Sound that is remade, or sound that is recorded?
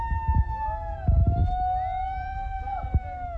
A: recorded